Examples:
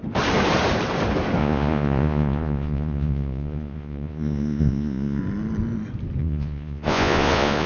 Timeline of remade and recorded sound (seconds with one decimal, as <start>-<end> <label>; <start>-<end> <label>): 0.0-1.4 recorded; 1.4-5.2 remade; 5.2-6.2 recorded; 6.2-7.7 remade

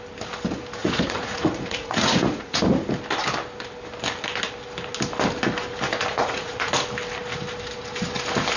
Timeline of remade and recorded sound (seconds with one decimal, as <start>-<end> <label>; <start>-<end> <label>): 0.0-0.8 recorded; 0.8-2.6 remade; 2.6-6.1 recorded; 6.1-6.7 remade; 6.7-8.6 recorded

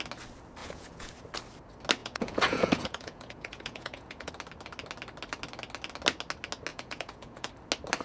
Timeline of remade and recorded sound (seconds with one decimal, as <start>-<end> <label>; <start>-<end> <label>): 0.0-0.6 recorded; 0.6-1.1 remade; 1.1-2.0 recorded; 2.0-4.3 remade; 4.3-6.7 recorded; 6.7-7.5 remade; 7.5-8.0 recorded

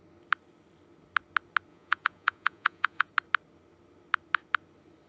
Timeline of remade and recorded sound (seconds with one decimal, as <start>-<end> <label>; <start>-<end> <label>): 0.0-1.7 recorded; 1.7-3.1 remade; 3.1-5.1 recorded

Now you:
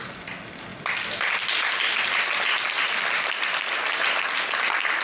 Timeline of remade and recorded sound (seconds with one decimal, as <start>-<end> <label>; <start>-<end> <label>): 0.0-5.0 recorded

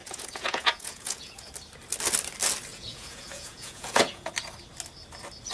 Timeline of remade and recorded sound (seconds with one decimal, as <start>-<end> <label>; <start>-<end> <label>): 0.0-1.5 remade; 1.5-2.7 recorded; 2.7-4.3 remade; 4.3-5.5 recorded

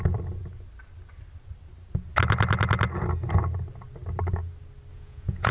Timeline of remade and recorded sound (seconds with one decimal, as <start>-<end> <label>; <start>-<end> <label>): 0.0-4.9 recorded; 4.9-5.5 remade